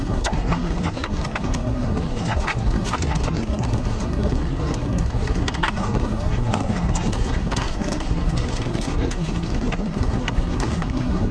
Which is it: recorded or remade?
remade